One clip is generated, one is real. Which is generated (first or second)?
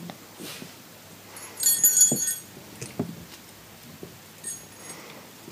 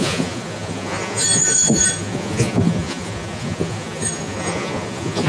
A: second